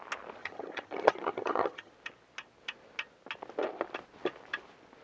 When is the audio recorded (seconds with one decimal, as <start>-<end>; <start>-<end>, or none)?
0.0-0.4; 1.9-5.0